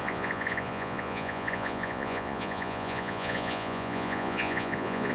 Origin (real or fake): fake